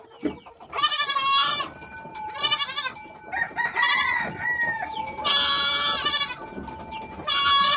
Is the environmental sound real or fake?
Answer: real